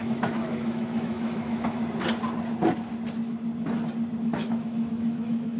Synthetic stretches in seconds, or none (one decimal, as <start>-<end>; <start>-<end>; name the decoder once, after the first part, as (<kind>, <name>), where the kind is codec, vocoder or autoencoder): 0.0-1.8 (autoencoder, DAC-VAE); 4.2-5.6